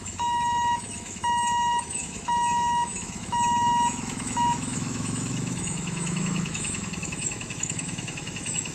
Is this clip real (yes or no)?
no